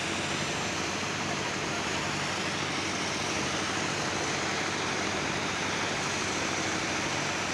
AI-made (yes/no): no